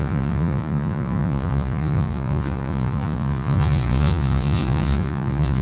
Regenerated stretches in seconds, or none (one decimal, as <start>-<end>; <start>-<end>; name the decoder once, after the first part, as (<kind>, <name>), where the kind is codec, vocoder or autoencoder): 0.0-5.6 (vocoder, Vocos)